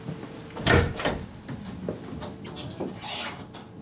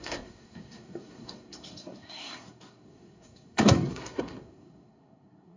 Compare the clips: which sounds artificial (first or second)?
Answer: second